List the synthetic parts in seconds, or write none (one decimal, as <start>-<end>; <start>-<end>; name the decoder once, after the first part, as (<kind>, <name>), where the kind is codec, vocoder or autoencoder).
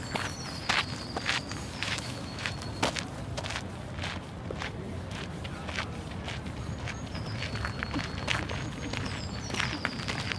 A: 1.8-2.5 (autoencoder, DAC-VAE)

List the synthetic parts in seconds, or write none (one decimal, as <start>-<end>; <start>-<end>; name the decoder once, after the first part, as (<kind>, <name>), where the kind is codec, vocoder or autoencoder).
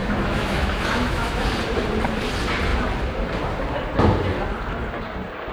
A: 0.0-1.4 (autoencoder, DAC-VAE)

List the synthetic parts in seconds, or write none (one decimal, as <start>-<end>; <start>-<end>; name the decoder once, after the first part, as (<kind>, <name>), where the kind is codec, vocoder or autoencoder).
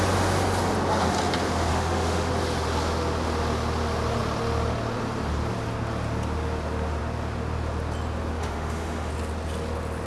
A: 1.7-2.3 (autoencoder, DAC-VAE); 8.4-9.1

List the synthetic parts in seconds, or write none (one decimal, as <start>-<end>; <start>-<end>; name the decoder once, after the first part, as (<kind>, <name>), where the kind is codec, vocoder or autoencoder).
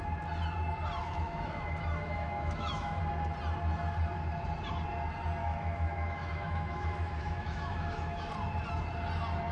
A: 1.0-3.0 (autoencoder, DAC-VAE); 5.4-8.3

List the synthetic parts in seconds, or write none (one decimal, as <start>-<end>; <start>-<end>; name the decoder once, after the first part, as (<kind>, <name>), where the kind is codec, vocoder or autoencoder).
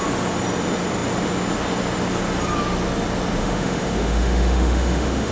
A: 3.4-5.3 (autoencoder, DAC-VAE)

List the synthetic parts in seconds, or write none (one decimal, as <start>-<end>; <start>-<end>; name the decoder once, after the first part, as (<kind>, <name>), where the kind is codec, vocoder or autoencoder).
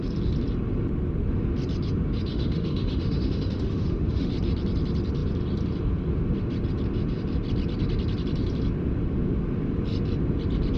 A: 2.3-4.3 (autoencoder, DAC-VAE)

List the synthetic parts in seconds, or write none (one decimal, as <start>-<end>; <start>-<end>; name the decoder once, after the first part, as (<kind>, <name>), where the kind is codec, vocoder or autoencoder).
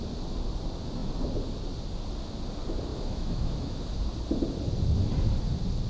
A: 2.9-4.0 (autoencoder, DAC-VAE)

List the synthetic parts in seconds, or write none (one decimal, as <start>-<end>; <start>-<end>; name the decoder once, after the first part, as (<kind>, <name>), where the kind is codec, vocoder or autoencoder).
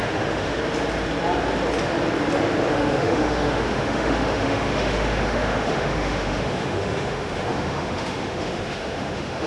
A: 0.0-0.6 (autoencoder, DAC-VAE); 2.7-9.5